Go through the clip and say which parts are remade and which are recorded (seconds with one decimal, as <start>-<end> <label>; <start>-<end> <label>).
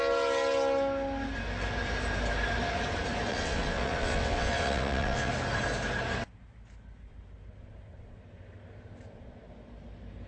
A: 0.0-3.3 recorded; 3.3-5.3 remade; 5.3-10.3 recorded